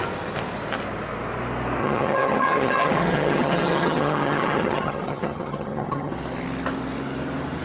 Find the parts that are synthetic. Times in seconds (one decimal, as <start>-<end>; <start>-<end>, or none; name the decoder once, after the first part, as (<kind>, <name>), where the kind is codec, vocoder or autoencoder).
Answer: 1.8-6.1 (vocoder, HiFi-GAN)